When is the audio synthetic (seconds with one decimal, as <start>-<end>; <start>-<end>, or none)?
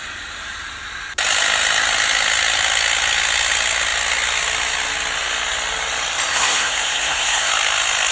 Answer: 6.3-7.5